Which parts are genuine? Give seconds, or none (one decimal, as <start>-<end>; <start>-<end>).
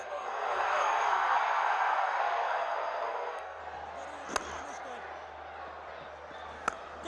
3.6-7.1